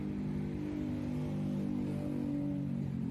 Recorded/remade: recorded